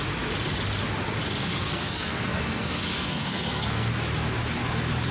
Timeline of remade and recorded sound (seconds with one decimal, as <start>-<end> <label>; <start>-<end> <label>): 0.0-1.4 recorded; 1.4-3.9 remade; 3.9-5.1 recorded